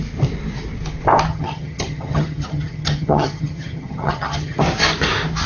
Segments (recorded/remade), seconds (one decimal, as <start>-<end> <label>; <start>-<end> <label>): 0.0-1.3 recorded; 1.3-4.6 remade; 4.6-5.5 recorded

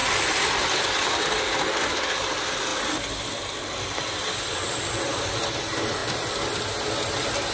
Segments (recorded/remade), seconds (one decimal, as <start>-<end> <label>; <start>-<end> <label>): 0.0-7.5 recorded